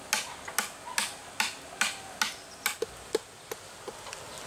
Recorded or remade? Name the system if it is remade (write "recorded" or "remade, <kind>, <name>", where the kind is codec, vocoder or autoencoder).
recorded